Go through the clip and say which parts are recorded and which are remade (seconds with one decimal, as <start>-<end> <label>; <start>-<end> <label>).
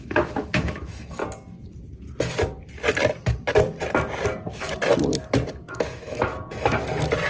0.0-1.2 remade; 1.2-5.5 recorded; 5.5-6.3 remade; 6.3-7.3 recorded